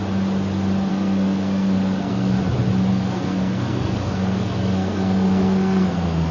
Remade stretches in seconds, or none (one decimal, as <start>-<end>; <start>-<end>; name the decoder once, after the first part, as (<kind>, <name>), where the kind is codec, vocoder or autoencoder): 0.9-2.4 (codec, SNAC); 2.9-6.3